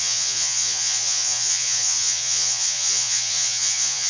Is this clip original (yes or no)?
no